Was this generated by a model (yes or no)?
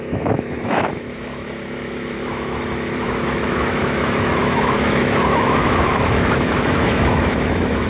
yes